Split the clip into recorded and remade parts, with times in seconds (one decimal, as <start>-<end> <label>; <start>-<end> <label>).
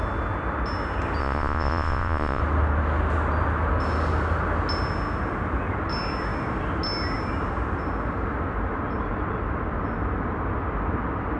0.0-1.2 recorded; 1.2-2.4 remade; 2.4-11.4 recorded